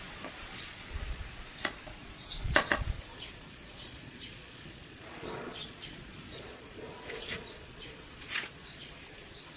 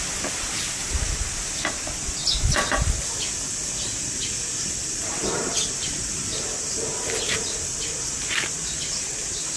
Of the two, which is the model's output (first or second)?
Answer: first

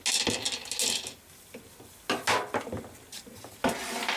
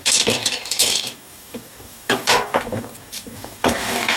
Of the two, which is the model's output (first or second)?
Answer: second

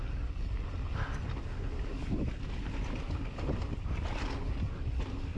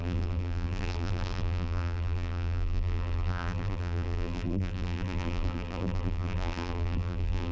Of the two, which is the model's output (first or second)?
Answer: second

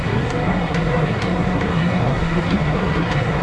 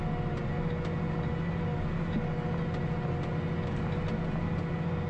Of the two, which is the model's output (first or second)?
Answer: first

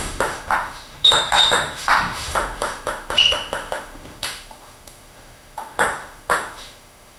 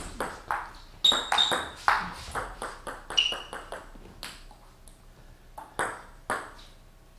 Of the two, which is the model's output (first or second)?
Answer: first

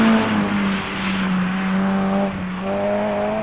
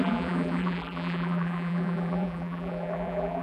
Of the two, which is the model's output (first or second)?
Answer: second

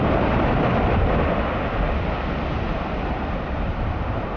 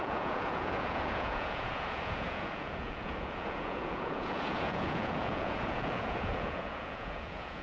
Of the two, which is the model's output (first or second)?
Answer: second